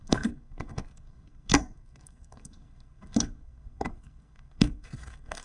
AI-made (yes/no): yes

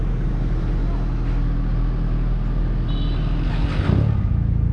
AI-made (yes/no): no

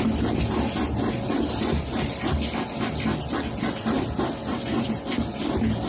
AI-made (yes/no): no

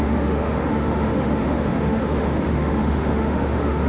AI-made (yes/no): yes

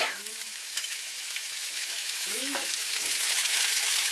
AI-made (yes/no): yes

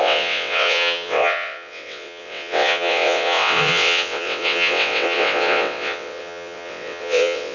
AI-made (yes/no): yes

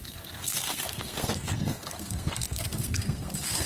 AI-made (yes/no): yes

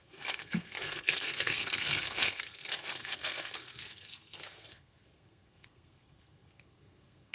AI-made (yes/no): yes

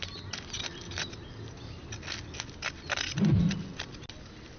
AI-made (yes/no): no